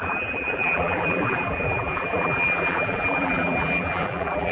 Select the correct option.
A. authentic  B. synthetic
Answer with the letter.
B